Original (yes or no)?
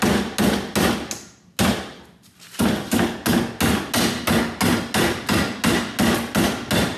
yes